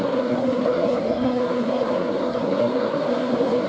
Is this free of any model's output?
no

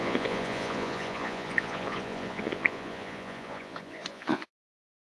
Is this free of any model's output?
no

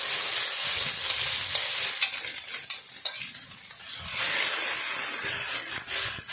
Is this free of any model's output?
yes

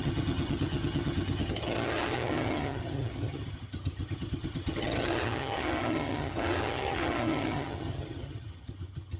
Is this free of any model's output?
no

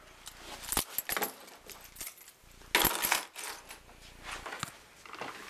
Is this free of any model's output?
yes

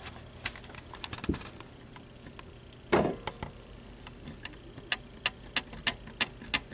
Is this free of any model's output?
yes